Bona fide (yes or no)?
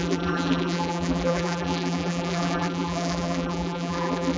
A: no